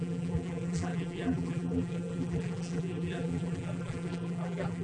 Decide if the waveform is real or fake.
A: fake